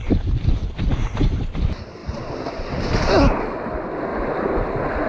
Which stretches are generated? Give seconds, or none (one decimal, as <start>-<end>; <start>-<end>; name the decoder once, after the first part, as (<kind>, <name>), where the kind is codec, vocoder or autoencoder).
2.0-2.7 (vocoder, BigVGAN v2); 4.1-5.1